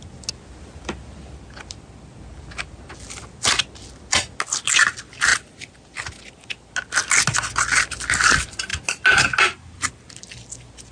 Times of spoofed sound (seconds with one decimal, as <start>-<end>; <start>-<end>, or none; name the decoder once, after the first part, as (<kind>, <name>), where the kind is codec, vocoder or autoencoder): none